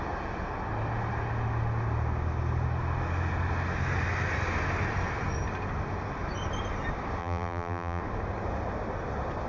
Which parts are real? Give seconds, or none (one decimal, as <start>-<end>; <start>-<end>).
0.0-7.2; 8.0-9.5